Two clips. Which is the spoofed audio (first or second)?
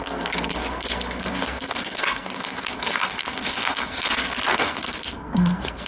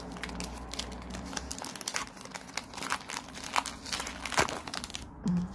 first